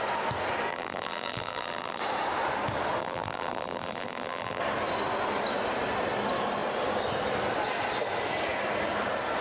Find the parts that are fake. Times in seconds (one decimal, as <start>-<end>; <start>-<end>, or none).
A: 0.7-2.0; 3.0-4.6